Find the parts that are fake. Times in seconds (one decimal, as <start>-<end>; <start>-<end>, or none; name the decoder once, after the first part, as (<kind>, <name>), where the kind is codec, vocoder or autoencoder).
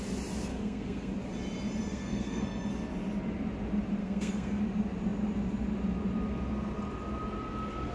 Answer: 0.5-1.1 (codec, SNAC); 1.9-2.7; 4.0-4.6